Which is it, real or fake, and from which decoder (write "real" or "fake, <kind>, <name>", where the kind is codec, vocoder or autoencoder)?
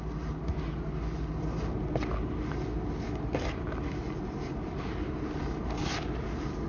real